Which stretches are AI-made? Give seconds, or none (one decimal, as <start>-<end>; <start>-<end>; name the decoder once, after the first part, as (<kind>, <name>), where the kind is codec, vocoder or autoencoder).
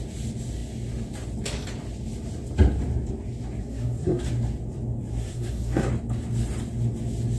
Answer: 3.6-4.3 (codec, SNAC); 5.2-5.9